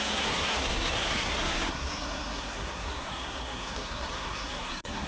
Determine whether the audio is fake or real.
fake